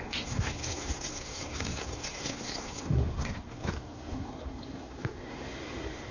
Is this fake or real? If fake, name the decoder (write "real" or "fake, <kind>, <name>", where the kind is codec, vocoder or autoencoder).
fake, codec, SNAC